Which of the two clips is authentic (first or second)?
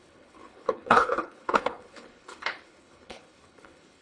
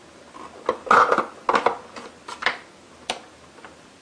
second